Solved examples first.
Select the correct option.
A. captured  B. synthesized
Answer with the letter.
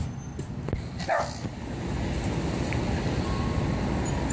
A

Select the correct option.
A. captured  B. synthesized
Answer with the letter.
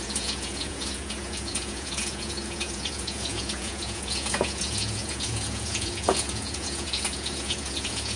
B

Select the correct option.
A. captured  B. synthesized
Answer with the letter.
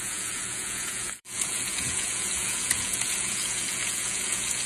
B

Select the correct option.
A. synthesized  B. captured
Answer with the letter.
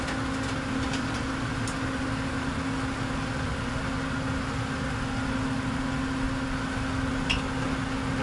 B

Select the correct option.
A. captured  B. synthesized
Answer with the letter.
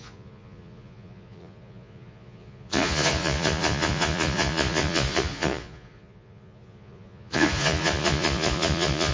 B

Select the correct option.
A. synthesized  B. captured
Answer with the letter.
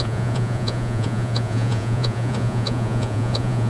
A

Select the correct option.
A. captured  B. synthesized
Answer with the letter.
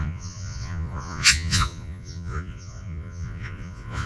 B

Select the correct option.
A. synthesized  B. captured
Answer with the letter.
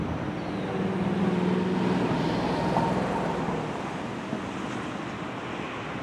B